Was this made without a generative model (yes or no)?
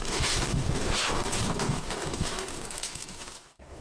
no